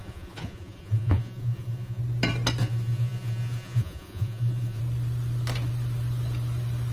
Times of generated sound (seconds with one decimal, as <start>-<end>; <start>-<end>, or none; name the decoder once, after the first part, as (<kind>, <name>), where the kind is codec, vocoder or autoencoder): 0.0-2.0 (vocoder, Vocos); 2.6-4.8